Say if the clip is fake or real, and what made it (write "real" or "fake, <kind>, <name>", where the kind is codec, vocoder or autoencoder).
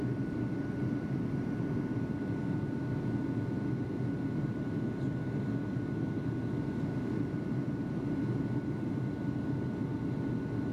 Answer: real